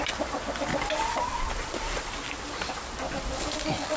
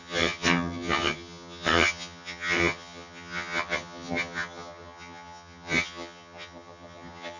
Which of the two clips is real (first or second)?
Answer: first